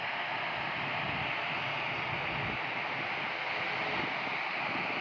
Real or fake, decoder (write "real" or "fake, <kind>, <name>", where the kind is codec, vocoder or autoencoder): real